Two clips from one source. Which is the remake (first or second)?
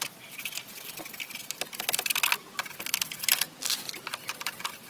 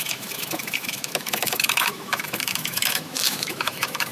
second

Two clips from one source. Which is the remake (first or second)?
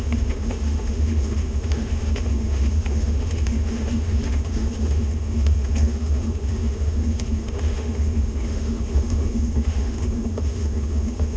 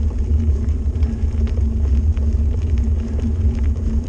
first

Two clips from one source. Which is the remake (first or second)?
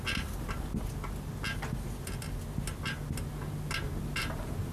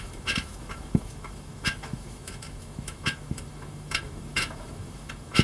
second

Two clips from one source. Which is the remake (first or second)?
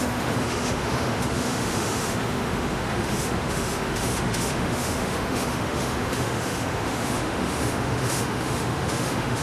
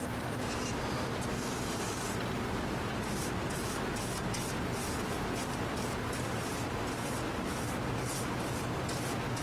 first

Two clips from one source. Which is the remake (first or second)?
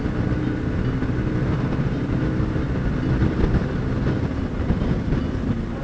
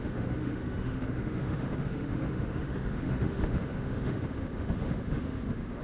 second